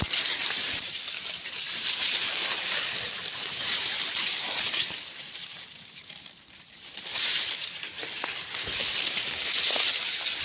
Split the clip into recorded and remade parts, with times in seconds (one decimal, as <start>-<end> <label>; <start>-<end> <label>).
0.0-0.4 remade; 0.4-1.7 recorded; 1.7-8.0 remade; 8.0-10.4 recorded